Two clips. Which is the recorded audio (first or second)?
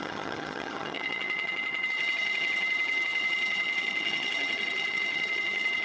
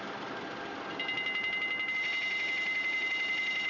second